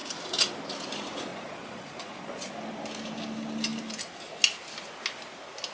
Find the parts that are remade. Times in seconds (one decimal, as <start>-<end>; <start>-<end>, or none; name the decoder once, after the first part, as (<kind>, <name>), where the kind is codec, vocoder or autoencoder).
1.3-2.5 (vocoder, Vocos)